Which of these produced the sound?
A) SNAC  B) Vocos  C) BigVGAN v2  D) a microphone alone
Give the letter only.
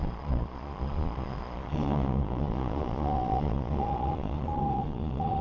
B